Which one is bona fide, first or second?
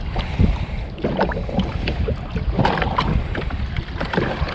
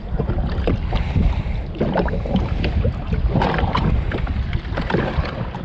second